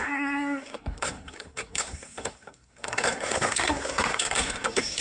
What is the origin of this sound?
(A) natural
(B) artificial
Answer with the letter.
B